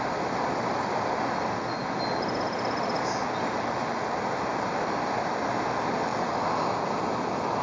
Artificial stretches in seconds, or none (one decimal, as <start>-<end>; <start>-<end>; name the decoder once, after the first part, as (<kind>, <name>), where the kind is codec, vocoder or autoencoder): 0.0-1.8 (vocoder, BigVGAN v2); 4.5-6.1; 6.7-7.6